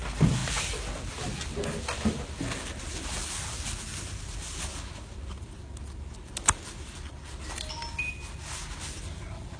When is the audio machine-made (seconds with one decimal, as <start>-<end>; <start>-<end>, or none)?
none